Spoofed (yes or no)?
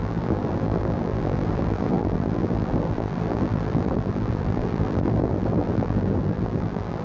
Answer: yes